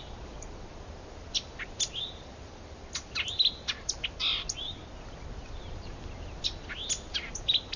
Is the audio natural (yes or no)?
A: yes